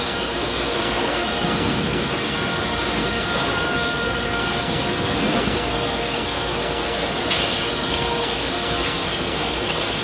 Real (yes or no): no